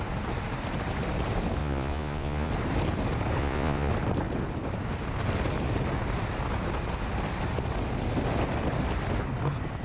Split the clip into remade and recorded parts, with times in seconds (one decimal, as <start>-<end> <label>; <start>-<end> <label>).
0.0-1.6 recorded; 1.6-2.5 remade; 2.5-3.4 recorded; 3.4-3.9 remade; 3.9-9.8 recorded